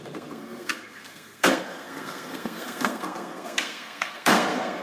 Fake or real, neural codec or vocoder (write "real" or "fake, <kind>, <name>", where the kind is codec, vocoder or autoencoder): fake, codec, SNAC